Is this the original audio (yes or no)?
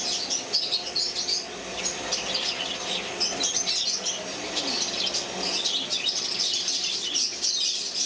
yes